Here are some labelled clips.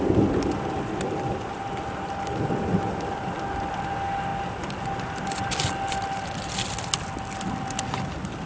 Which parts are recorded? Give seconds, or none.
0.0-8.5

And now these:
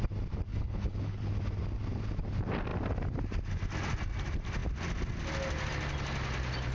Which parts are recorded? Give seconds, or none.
0.0-0.5; 1.3-6.7

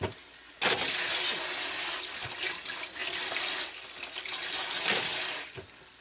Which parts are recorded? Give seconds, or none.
0.0-6.0

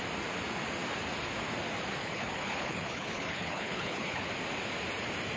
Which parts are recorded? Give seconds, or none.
0.0-2.0; 4.3-5.4

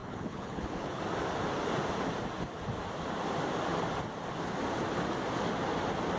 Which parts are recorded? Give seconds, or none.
1.0-6.2